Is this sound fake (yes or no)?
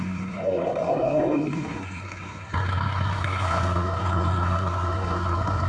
yes